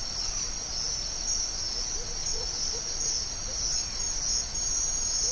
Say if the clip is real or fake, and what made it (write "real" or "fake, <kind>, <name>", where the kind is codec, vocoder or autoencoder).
real